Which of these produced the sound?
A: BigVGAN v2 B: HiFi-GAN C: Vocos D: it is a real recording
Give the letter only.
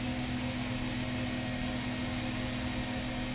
D